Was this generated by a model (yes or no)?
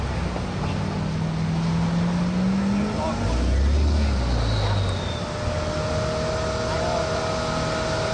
no